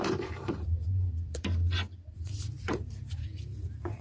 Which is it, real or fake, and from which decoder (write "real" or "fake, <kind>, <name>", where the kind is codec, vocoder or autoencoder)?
fake, vocoder, BigVGAN v2